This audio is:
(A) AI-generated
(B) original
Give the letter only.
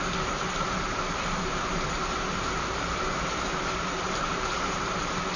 A